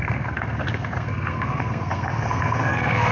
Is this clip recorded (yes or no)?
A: no